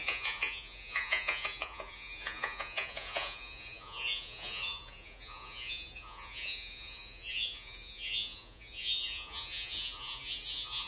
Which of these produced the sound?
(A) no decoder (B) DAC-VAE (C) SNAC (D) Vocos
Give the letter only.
D